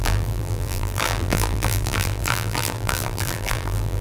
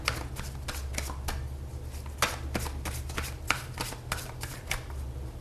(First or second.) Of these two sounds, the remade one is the first